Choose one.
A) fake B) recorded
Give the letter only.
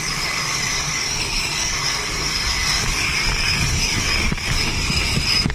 A